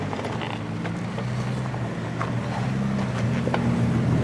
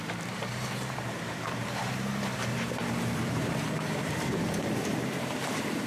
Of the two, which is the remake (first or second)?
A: second